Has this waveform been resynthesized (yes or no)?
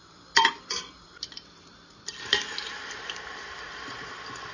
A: yes